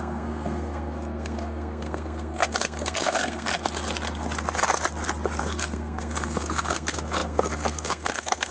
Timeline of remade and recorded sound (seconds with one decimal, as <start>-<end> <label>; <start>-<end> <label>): 0.0-3.5 remade; 3.5-5.4 recorded; 5.4-8.5 remade